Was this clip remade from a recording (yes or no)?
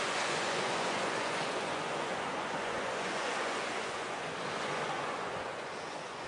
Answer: yes